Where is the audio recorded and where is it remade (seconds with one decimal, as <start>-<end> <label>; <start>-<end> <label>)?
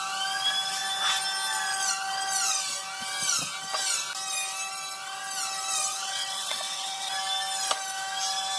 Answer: 0.0-5.9 recorded; 5.9-7.1 remade; 7.1-8.6 recorded